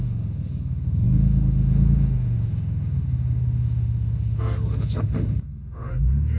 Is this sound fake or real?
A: fake